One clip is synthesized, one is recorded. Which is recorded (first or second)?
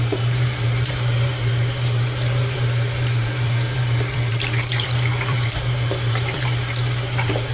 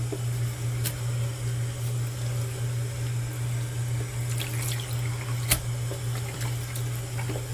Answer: second